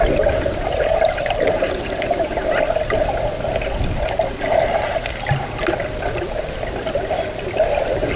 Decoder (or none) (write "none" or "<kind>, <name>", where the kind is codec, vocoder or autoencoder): none